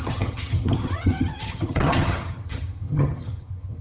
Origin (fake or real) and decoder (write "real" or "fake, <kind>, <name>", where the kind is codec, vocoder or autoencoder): fake, vocoder, HiFi-GAN